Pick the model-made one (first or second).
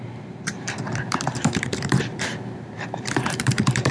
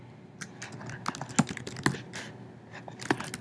first